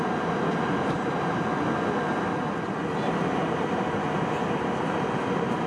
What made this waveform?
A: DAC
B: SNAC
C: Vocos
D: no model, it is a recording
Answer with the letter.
D